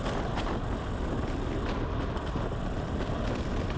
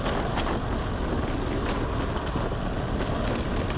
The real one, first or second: second